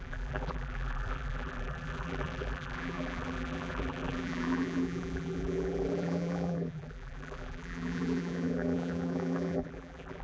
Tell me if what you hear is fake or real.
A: fake